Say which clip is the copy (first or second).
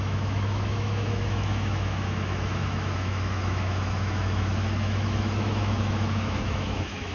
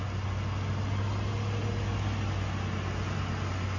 first